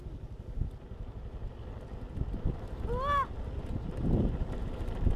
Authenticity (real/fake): real